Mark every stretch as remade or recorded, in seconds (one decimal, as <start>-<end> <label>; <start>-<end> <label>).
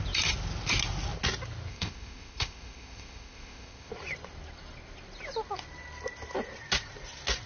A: 0.0-1.7 recorded; 1.7-3.9 remade; 3.9-7.5 recorded